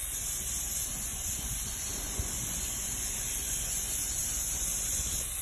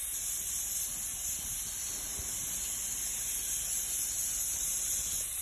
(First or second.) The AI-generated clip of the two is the first